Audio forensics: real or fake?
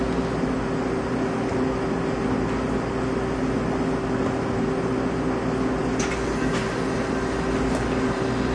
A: real